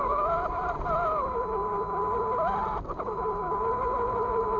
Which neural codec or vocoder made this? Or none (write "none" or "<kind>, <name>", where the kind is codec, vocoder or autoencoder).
none